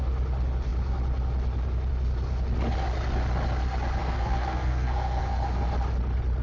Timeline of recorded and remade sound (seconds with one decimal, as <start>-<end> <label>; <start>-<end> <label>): 0.0-4.0 recorded; 4.0-5.2 remade; 5.2-6.4 recorded